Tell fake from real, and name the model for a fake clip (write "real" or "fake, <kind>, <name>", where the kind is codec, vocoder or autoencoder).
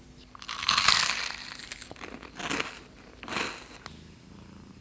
real